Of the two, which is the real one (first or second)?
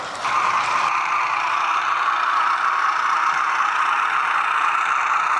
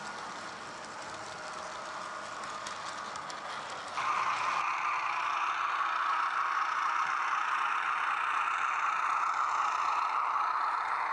second